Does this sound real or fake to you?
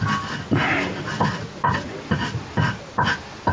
real